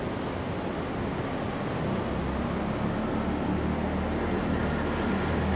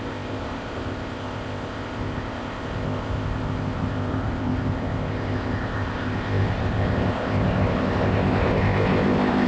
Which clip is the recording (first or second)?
first